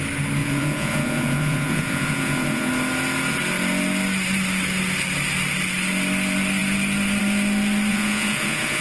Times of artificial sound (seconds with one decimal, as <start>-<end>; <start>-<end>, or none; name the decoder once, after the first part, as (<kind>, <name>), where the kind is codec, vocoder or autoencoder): 0.4-2.7 (vocoder, Vocos); 7.9-8.8